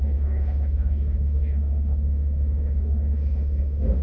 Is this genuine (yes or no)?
no